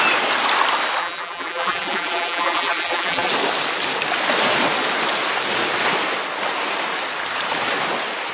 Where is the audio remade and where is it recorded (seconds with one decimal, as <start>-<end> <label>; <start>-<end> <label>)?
0.0-1.0 recorded; 1.0-3.3 remade; 3.3-8.3 recorded